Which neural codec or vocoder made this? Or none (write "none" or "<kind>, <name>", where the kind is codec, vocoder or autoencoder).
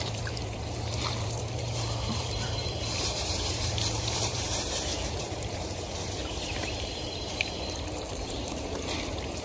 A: vocoder, BigVGAN v2